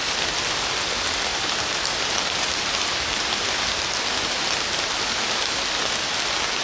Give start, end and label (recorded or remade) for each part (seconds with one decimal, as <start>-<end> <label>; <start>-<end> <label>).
0.0-6.6 recorded